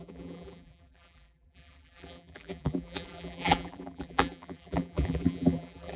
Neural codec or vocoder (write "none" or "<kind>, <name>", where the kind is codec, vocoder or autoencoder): vocoder, BigVGAN v2